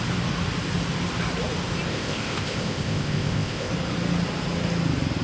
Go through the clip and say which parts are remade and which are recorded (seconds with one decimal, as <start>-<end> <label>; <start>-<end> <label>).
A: 0.0-1.9 recorded; 1.9-3.7 remade; 3.7-5.2 recorded

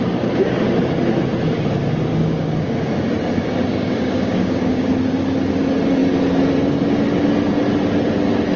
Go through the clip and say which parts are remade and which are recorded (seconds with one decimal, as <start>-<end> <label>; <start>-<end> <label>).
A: 0.0-2.1 recorded; 2.1-2.9 remade; 2.9-3.7 recorded; 3.7-4.9 remade; 4.9-8.6 recorded

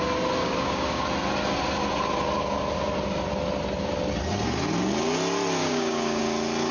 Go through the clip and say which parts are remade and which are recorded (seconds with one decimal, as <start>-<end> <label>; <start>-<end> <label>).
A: 0.0-0.4 recorded; 0.4-1.0 remade; 1.0-5.6 recorded; 5.6-6.2 remade; 6.2-6.7 recorded

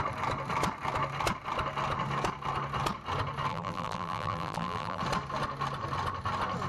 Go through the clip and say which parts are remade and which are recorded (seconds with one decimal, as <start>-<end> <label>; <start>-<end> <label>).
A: 0.0-3.5 recorded; 3.5-5.0 remade; 5.0-6.7 recorded

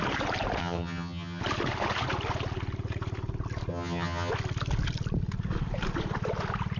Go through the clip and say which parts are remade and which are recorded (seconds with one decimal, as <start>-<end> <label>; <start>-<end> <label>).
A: 0.0-0.6 recorded; 0.6-1.4 remade; 1.4-3.7 recorded; 3.7-4.3 remade; 4.3-6.8 recorded

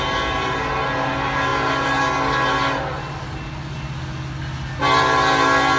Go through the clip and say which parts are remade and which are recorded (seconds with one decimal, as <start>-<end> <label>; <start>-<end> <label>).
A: 0.0-5.8 recorded

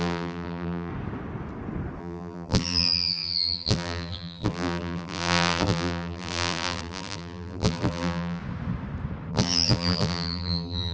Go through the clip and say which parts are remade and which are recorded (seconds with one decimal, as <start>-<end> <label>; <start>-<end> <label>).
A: 0.0-0.9 remade; 0.9-2.0 recorded; 2.0-8.4 remade; 8.4-9.3 recorded; 9.3-10.9 remade

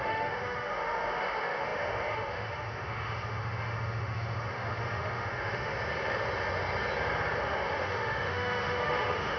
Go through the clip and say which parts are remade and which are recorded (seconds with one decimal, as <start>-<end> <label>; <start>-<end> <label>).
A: 0.0-5.7 remade; 5.7-7.4 recorded; 7.4-9.4 remade